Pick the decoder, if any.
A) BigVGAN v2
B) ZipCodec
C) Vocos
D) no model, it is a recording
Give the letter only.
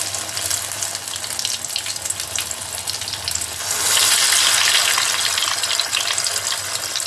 D